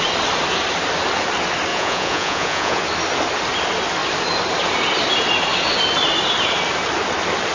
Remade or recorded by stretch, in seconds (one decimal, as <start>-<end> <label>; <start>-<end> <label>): 0.0-1.7 recorded; 1.7-2.8 remade; 2.8-7.5 recorded

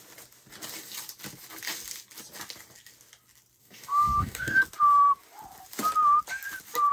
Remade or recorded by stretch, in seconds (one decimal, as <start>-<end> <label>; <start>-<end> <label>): 0.0-3.6 recorded; 3.6-4.6 remade; 4.6-6.9 recorded

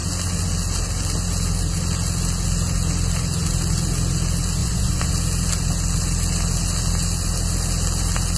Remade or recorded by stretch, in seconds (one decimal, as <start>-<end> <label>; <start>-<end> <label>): 0.0-4.6 recorded; 4.6-5.1 remade; 5.1-8.4 recorded

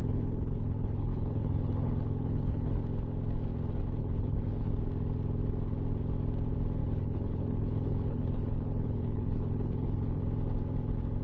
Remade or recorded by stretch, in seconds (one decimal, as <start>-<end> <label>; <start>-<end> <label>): 0.0-2.8 remade; 2.8-4.0 recorded; 4.0-4.7 remade; 4.7-6.8 recorded; 6.8-10.2 remade; 10.2-11.2 recorded

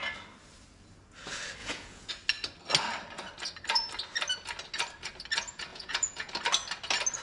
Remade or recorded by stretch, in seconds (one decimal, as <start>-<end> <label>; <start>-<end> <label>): 0.0-1.6 recorded; 1.6-2.1 remade; 2.1-5.7 recorded; 5.7-6.3 remade; 6.3-7.2 recorded

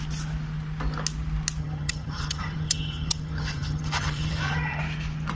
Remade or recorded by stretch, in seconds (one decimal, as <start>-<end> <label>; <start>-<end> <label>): 0.0-1.6 recorded; 1.6-4.8 remade; 4.8-5.4 recorded

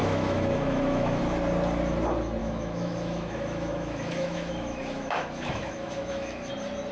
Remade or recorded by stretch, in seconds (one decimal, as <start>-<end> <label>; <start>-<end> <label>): 0.0-1.2 remade; 1.2-2.4 recorded; 2.4-6.5 remade; 6.5-6.9 recorded